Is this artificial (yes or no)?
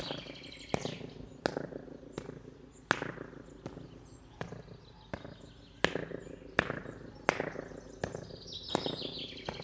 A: no